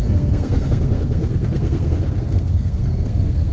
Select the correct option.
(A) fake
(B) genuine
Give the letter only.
A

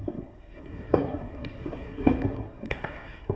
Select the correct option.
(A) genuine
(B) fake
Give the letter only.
B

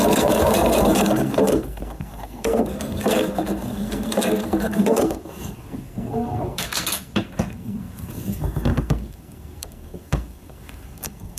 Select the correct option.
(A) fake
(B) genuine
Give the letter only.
A